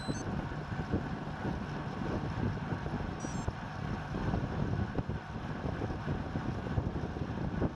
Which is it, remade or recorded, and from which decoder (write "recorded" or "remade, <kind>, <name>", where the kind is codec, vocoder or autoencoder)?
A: recorded